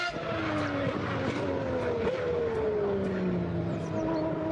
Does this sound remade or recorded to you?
recorded